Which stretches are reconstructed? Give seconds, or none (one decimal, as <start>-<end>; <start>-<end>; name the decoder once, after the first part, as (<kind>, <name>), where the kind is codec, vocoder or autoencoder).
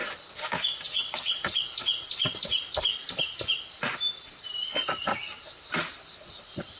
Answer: 0.0-1.5 (vocoder, BigVGAN v2); 4.6-5.4